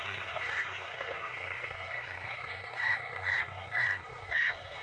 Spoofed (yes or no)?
yes